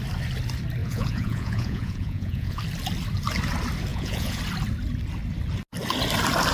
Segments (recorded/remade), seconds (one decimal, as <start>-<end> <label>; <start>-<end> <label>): 0.0-0.8 recorded; 0.8-2.6 remade; 2.6-3.9 recorded; 3.9-4.4 remade; 4.4-6.5 recorded